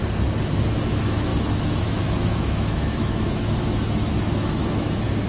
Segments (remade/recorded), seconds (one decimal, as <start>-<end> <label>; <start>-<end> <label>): 0.0-0.9 recorded; 0.9-5.3 remade